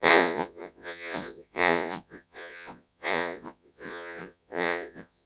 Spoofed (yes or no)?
yes